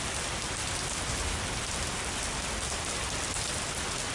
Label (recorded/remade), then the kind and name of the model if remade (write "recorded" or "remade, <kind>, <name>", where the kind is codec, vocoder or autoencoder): recorded